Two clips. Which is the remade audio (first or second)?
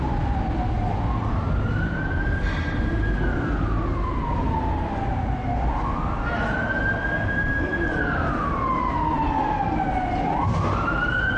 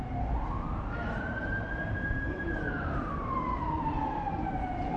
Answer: second